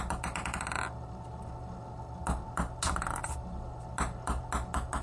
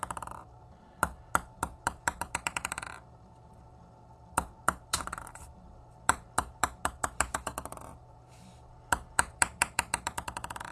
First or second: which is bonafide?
first